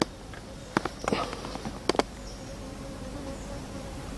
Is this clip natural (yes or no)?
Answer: yes